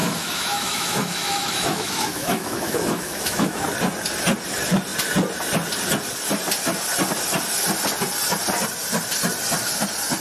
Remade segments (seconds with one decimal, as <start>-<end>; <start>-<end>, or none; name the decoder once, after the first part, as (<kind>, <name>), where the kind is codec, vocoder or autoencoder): 0.0-3.6 (autoencoder, DAC-VAE)